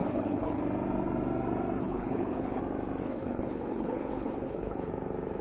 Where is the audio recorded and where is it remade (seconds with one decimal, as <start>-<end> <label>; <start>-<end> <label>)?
0.0-0.6 remade; 0.6-1.8 recorded; 1.8-2.6 remade; 2.6-3.0 recorded; 3.0-4.9 remade; 4.9-5.4 recorded